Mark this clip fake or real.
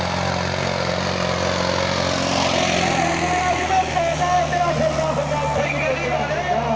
real